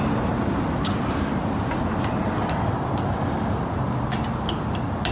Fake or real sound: real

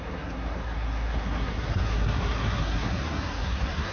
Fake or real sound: fake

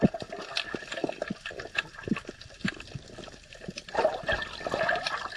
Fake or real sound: fake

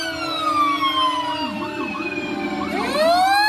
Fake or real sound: real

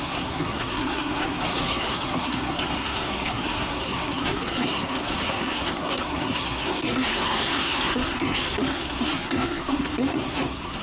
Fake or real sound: fake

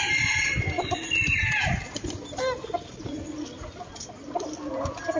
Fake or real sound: real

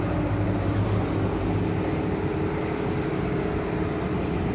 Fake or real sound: real